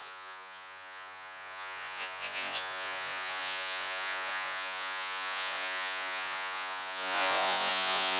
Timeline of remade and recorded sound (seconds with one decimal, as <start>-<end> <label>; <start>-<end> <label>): 0.0-8.2 remade